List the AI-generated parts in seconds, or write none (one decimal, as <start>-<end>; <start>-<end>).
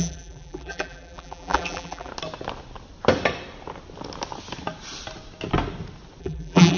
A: 0.0-2.1; 6.2-6.8